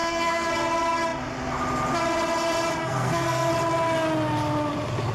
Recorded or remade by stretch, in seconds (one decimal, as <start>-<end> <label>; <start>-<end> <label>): 0.0-0.5 remade; 0.5-2.8 recorded; 2.8-3.5 remade; 3.5-5.1 recorded